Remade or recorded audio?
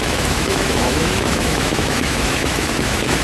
remade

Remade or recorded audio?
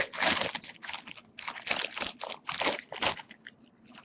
recorded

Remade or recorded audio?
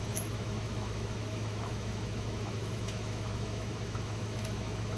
remade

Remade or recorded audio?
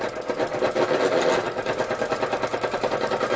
recorded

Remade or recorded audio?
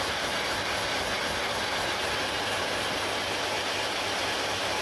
recorded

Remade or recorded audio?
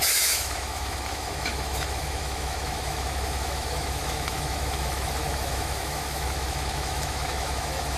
remade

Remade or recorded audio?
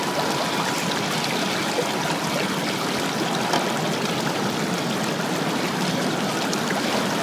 recorded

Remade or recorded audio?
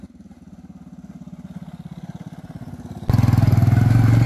recorded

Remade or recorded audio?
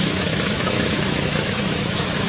remade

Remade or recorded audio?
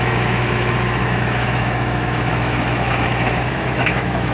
remade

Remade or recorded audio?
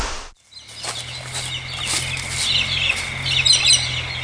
recorded